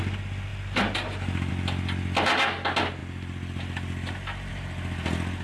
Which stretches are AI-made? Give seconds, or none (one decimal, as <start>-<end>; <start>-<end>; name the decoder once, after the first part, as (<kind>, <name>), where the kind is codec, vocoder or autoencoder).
none